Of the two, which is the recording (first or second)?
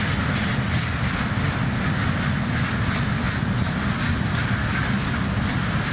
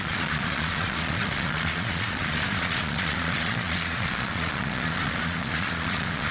first